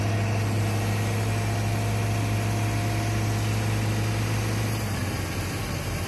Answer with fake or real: real